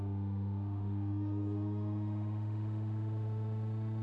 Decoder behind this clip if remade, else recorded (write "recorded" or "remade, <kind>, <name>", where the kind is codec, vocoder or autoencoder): remade, autoencoder, DAC-VAE